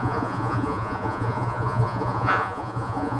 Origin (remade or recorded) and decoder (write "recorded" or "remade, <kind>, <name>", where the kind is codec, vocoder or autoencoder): remade, vocoder, Vocos